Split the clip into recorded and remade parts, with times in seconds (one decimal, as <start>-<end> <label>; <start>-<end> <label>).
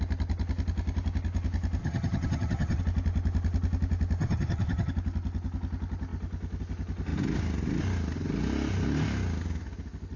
0.0-1.8 recorded; 1.8-2.8 remade; 2.8-4.2 recorded; 4.2-4.9 remade; 4.9-10.2 recorded